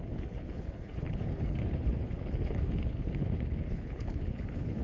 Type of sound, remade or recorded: remade